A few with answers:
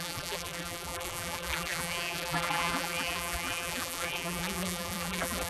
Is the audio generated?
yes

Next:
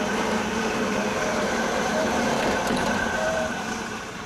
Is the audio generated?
yes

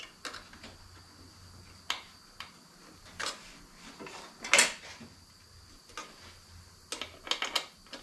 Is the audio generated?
no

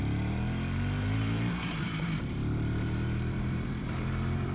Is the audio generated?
yes